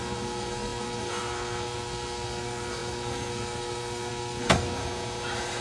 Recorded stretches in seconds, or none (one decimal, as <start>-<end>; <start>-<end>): 4.8-5.6